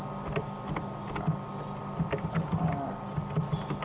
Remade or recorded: recorded